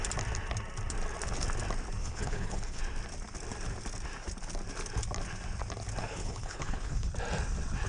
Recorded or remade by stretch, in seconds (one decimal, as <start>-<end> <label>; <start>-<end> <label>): 0.0-2.0 recorded; 2.0-2.8 remade; 2.8-6.0 recorded; 6.0-7.1 remade; 7.1-7.9 recorded